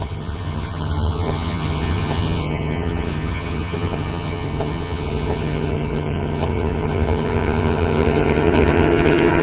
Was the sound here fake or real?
fake